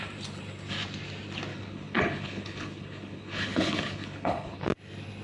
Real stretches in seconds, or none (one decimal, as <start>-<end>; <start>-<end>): 0.0-1.5; 4.6-5.2